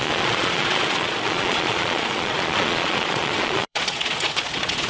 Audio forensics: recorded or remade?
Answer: remade